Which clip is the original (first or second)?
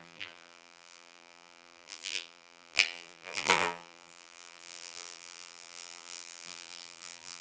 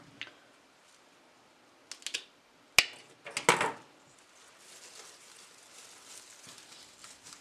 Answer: second